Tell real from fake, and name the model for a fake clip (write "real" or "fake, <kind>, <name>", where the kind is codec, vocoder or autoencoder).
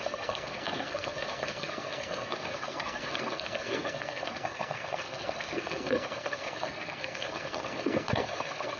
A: fake, codec, SNAC